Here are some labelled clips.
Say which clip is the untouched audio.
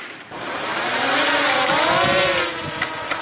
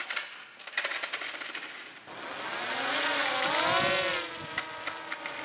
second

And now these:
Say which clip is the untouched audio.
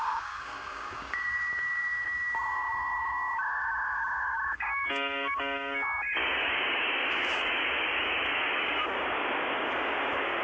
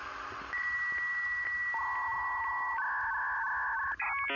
second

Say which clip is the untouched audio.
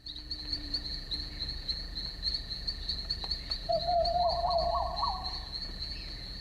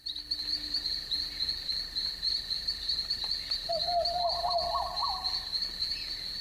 second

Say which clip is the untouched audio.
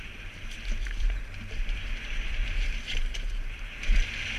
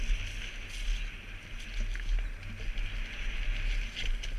second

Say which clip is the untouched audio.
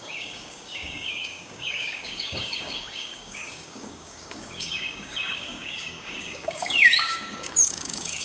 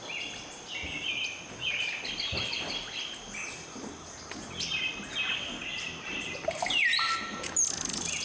second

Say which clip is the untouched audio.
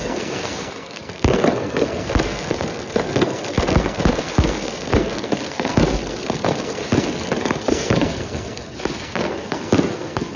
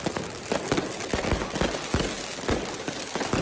second